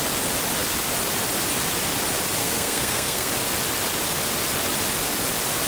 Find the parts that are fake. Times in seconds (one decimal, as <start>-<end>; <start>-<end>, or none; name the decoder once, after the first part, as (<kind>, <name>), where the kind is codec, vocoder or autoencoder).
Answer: 2.4-3.3 (codec, SNAC)